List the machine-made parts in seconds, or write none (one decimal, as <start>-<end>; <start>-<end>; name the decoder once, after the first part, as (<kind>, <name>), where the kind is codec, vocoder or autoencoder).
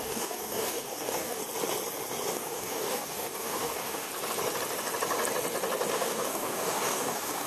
0.0-1.4 (codec, DAC); 2.3-4.1; 5.9-7.5